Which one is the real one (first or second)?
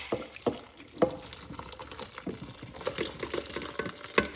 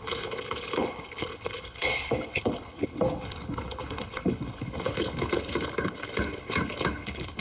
first